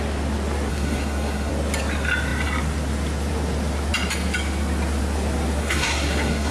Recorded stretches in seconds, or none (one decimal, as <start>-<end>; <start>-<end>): 0.0-0.7; 1.5-5.6